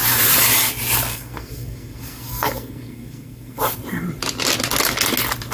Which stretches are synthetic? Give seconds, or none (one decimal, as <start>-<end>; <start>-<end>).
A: 1.1-3.6